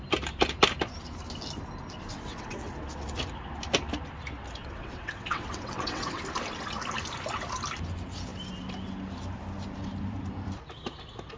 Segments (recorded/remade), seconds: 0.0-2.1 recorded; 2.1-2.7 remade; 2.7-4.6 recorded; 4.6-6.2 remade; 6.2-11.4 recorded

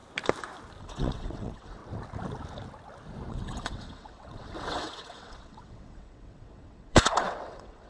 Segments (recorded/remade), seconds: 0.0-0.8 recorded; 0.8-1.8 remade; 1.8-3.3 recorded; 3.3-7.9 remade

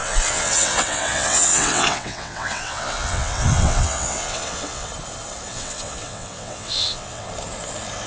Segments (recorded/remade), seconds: 0.0-4.9 remade; 4.9-5.5 recorded; 5.5-7.3 remade; 7.3-8.1 recorded

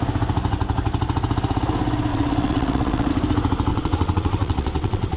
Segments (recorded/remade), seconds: 0.0-2.1 recorded; 2.1-3.1 remade; 3.1-3.7 recorded; 3.7-5.2 remade

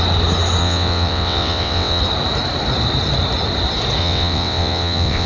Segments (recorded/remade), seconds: 0.0-0.6 recorded; 0.6-2.0 remade; 2.0-4.0 recorded; 4.0-5.3 remade

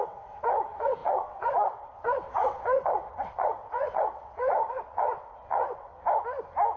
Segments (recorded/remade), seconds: 0.0-5.9 remade; 5.9-6.8 recorded